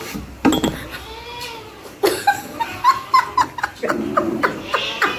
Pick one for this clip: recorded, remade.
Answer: recorded